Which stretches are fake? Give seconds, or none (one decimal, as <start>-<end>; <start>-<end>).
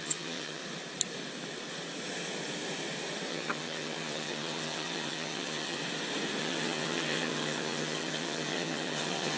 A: 0.0-0.6; 3.3-5.8; 6.4-9.4